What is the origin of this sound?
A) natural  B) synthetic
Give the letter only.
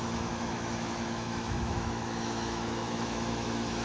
B